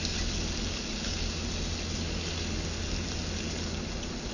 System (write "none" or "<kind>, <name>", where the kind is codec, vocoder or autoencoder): none